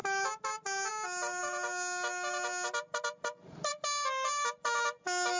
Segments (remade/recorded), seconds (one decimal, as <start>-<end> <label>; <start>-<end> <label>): 0.0-5.4 recorded